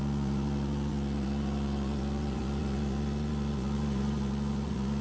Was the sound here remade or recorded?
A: remade